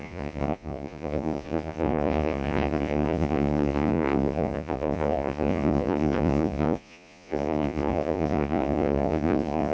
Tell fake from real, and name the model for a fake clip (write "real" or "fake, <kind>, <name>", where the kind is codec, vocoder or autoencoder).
fake, vocoder, Vocos